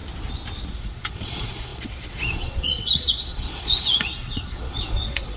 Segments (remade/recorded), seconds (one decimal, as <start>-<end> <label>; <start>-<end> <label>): 0.0-0.7 recorded; 0.7-5.4 remade